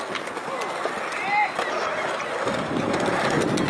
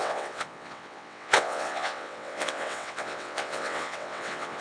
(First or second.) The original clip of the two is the first